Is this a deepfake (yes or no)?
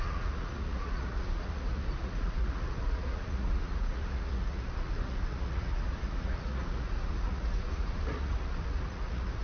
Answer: yes